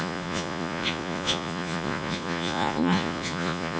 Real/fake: fake